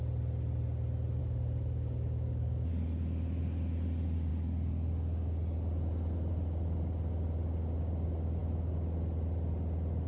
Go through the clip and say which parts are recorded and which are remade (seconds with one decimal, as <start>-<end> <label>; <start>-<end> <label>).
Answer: 0.0-1.2 recorded; 1.2-2.7 remade; 2.7-10.1 recorded